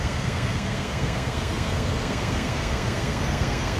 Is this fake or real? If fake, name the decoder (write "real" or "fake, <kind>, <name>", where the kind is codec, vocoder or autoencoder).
fake, codec, SNAC